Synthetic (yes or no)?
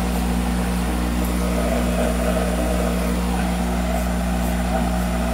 no